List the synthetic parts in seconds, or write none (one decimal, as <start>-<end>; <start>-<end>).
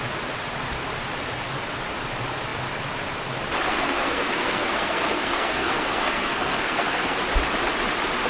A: 3.7-7.2